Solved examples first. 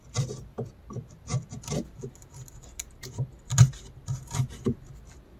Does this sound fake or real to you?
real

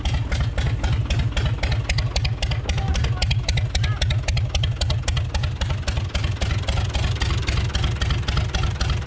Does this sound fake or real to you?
real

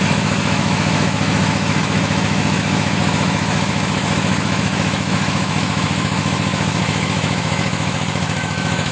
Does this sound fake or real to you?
fake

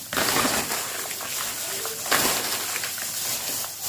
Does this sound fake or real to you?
real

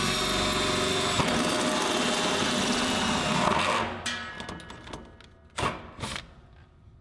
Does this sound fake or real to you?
real